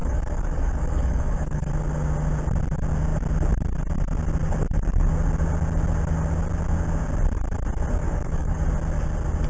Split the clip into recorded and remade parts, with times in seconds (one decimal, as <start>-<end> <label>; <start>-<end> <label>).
0.0-1.7 remade; 1.7-8.0 recorded; 8.0-8.6 remade; 8.6-9.5 recorded